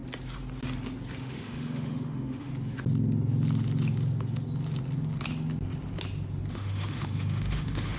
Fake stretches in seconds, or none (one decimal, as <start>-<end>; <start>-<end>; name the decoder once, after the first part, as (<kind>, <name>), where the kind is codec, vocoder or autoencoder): 1.2-2.5 (autoencoder, DAC-VAE); 6.5-8.0